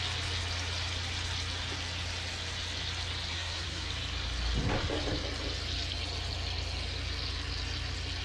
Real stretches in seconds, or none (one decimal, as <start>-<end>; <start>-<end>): 0.0-3.3; 3.9-8.2